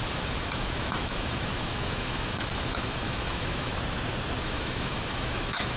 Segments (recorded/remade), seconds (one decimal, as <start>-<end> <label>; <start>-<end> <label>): 0.0-3.7 remade; 3.7-4.4 recorded; 4.4-5.8 remade